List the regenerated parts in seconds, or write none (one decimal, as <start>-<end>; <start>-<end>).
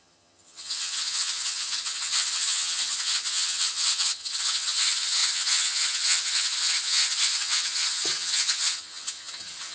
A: 0.0-9.7